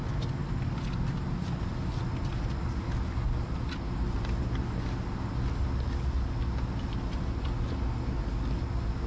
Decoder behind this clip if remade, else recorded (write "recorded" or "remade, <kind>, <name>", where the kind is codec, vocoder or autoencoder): recorded